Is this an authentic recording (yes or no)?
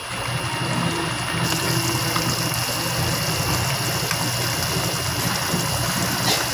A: yes